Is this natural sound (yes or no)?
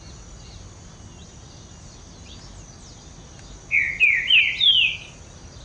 yes